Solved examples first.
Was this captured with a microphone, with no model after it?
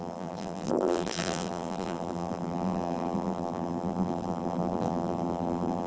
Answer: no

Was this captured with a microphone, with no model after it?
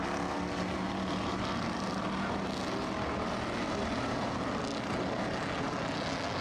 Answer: yes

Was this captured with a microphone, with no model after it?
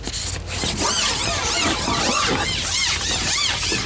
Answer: yes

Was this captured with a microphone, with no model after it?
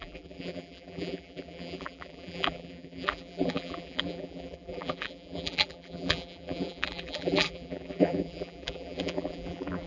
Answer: no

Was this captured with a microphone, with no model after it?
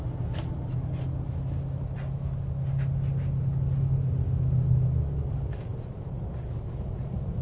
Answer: yes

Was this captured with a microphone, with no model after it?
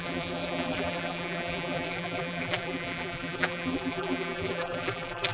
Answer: no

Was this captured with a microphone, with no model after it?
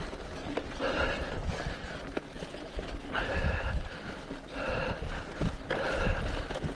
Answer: no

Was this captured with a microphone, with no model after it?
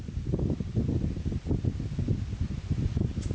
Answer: yes